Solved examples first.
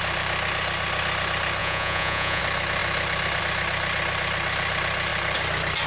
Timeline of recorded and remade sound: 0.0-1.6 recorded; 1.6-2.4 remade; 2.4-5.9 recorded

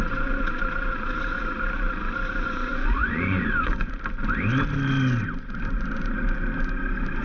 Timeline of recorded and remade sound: 0.0-2.7 recorded; 2.7-3.9 remade; 3.9-7.2 recorded

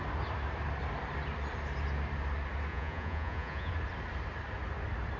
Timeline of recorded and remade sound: 0.0-2.7 recorded; 2.7-3.7 remade; 3.7-5.2 recorded

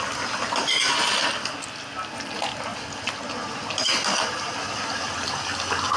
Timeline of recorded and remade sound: 0.0-6.0 recorded

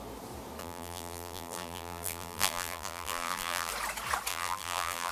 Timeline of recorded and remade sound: 0.0-0.6 recorded; 0.6-3.7 remade; 3.7-4.3 recorded; 4.3-5.1 remade